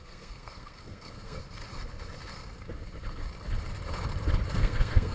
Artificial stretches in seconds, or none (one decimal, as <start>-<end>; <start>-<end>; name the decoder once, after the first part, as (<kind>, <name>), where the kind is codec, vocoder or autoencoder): 0.0-1.4 (codec, SNAC); 4.5-5.1